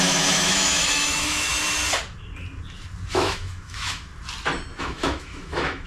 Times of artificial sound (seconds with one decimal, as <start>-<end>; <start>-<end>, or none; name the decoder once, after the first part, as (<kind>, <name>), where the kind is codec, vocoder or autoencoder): 0.0-1.5 (autoencoder, DAC-VAE); 3.1-4.1; 4.8-5.9